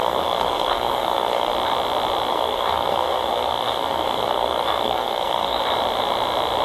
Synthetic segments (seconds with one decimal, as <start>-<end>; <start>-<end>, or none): 0.0-1.5; 2.3-5.6